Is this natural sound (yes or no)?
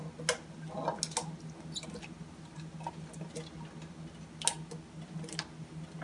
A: yes